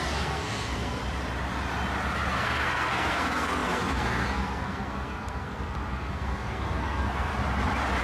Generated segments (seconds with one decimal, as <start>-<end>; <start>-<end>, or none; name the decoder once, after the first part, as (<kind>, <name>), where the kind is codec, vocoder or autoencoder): 0.0-1.0 (codec, SNAC); 2.3-7.3